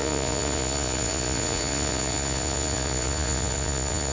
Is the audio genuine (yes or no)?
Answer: no